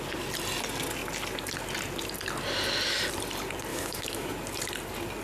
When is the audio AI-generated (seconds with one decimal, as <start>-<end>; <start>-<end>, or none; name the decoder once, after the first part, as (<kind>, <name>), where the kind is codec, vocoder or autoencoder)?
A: 3.7-4.3 (autoencoder, DAC-VAE)